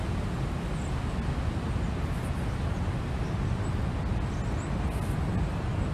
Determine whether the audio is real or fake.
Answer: real